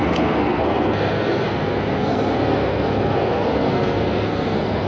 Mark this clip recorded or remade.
remade